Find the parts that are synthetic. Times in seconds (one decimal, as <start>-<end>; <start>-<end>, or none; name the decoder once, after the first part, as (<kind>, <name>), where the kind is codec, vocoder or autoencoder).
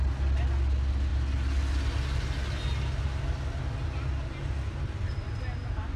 none